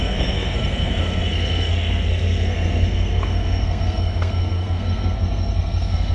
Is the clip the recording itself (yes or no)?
no